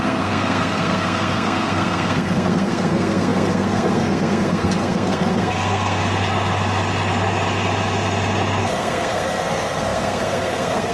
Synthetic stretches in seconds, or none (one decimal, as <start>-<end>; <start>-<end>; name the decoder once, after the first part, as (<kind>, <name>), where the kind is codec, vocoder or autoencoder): 0.0-6.0 (codec, SNAC); 8.6-10.9

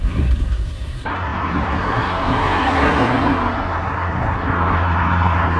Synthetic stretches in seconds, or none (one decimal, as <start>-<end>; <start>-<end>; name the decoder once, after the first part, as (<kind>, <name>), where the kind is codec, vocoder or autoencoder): 0.0-5.6 (codec, SNAC)

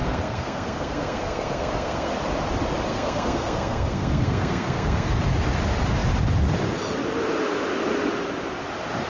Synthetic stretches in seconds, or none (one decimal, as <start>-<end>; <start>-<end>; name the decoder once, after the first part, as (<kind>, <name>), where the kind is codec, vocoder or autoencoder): 0.0-2.1 (codec, SNAC); 2.9-5.2

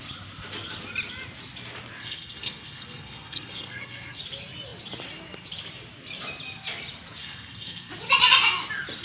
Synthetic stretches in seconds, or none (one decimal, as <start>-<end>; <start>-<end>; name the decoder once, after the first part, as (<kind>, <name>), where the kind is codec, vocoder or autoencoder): 2.0-4.2 (codec, SNAC); 7.2-7.9

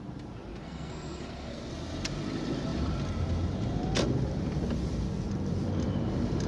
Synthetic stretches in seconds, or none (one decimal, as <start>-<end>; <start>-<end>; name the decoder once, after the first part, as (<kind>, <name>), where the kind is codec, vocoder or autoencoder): 0.5-1.7 (codec, SNAC)

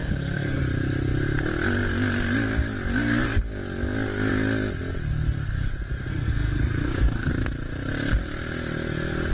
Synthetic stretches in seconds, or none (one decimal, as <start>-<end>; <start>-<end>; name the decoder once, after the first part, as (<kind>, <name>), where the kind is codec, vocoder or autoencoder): 0.0-0.6 (codec, SNAC); 6.1-7.3

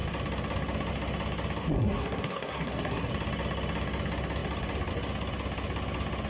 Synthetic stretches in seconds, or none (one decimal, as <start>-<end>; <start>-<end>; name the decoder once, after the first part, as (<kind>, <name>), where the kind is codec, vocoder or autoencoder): 1.6-3.1 (codec, SNAC)

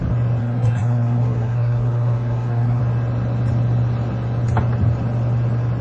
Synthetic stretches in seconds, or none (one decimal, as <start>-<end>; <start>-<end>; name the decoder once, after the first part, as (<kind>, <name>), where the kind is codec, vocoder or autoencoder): 0.4-2.8 (codec, SNAC)